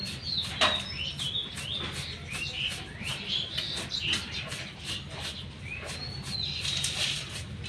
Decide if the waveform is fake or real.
real